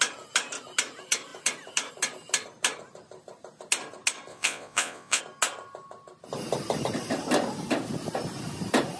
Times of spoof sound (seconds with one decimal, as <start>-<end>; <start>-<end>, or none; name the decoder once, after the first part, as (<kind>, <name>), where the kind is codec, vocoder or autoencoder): 4.3-5.2 (vocoder, Vocos)